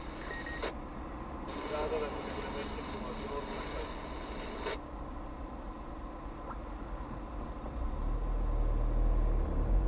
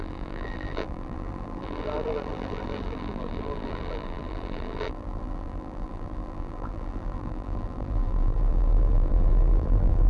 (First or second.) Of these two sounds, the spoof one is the second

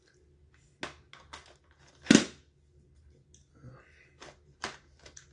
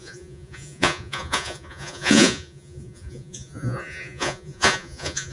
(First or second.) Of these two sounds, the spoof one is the second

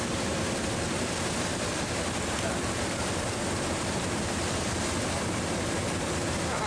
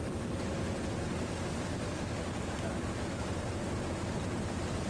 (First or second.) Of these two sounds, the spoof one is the first